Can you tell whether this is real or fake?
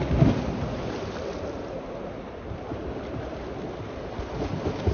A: real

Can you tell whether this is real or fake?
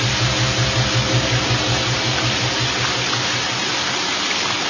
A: real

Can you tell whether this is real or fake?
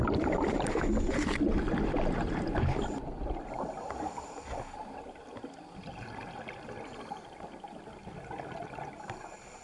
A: real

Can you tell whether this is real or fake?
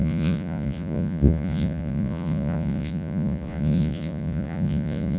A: fake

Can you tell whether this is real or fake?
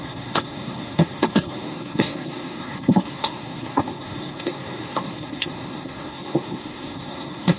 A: fake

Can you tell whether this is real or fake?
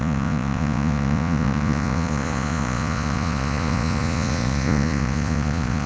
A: fake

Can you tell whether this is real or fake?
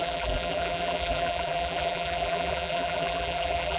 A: fake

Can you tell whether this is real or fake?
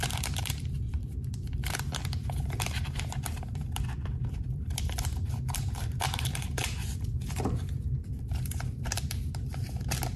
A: fake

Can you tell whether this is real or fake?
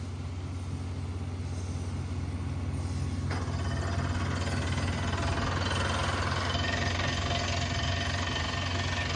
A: real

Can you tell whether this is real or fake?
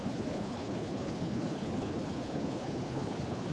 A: fake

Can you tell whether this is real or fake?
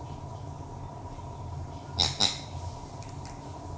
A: real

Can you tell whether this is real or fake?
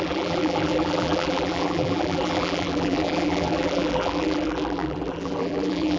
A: fake